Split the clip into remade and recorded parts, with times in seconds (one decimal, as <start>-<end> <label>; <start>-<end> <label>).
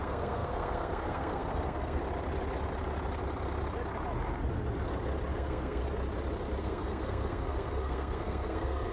0.0-2.0 remade; 2.0-5.3 recorded; 5.3-5.8 remade; 5.8-6.6 recorded; 6.6-8.9 remade